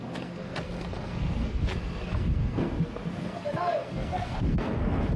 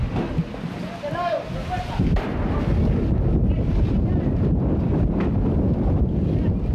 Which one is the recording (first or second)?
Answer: second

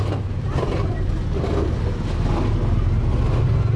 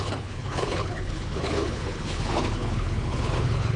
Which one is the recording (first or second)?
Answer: first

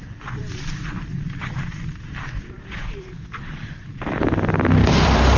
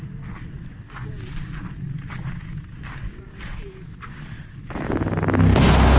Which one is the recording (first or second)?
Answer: second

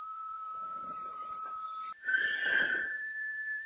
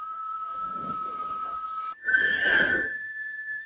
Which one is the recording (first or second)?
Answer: first